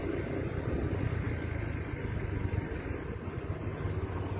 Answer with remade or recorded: recorded